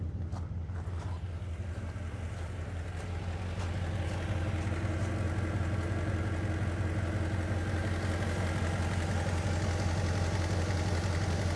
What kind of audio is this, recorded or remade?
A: recorded